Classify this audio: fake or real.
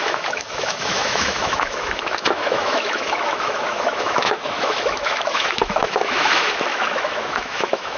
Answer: fake